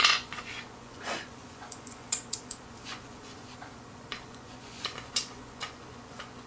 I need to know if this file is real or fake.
fake